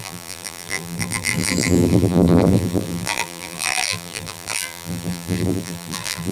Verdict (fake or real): fake